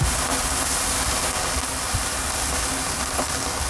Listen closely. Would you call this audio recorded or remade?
recorded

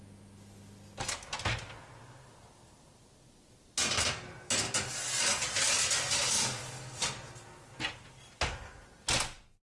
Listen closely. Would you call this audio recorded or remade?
recorded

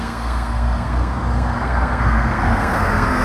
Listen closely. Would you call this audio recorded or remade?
remade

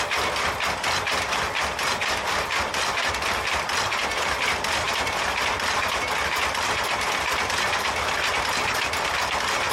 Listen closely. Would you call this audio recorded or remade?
recorded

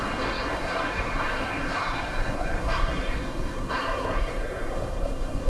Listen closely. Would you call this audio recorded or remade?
remade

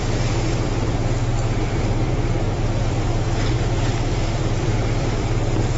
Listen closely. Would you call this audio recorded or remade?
remade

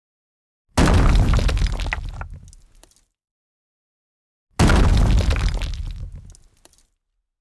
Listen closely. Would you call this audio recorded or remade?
recorded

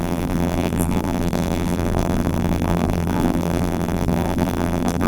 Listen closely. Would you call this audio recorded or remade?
remade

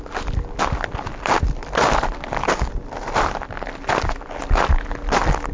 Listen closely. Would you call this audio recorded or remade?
recorded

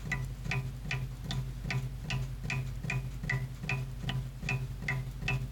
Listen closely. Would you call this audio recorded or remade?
recorded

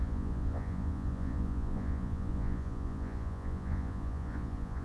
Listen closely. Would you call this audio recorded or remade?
remade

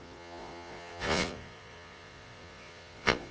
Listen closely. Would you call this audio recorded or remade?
remade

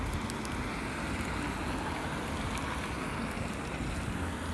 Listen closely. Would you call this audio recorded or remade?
recorded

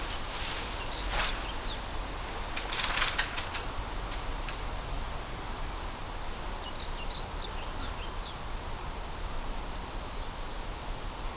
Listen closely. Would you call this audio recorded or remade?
recorded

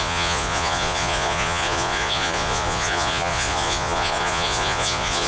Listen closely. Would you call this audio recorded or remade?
remade